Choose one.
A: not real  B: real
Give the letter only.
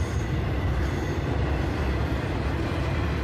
B